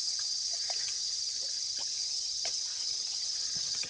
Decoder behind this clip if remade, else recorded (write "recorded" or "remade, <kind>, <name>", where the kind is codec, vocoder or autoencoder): remade, vocoder, HiFi-GAN